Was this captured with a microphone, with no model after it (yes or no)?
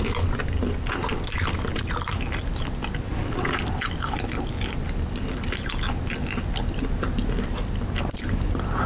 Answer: yes